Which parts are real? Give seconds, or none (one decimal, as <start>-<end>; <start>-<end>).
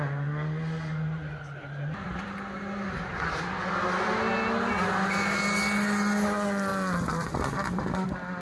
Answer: 0.0-8.4